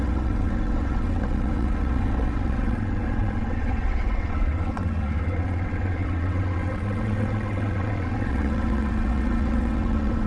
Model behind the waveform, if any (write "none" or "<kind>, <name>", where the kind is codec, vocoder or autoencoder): vocoder, WaveNeXt